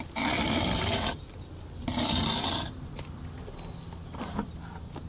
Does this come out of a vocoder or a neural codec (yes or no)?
no